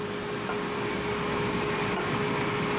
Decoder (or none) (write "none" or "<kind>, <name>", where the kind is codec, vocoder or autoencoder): none